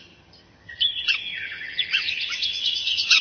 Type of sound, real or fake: fake